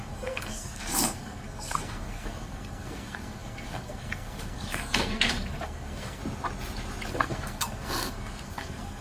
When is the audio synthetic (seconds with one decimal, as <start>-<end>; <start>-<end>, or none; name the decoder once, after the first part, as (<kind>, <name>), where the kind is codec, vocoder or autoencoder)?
0.0-6.2 (codec, SNAC); 7.1-9.0